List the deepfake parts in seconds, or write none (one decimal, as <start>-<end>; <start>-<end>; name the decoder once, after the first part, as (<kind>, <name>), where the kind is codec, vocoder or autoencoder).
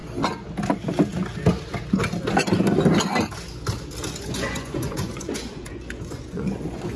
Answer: 4.2-7.0 (vocoder, Vocos)